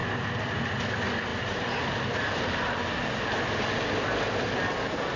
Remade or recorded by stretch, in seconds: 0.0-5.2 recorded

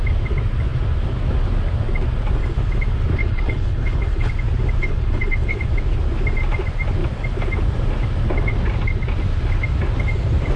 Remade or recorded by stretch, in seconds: 0.0-3.2 recorded; 3.2-4.3 remade; 4.3-4.8 recorded; 4.8-5.6 remade; 5.6-10.6 recorded

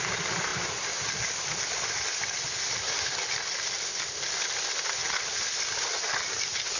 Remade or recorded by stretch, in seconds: 0.0-6.8 recorded

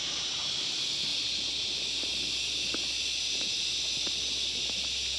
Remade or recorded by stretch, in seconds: 0.0-5.2 recorded